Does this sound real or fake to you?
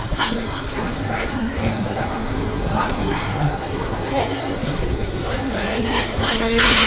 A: fake